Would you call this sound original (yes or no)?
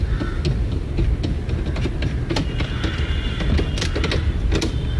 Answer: yes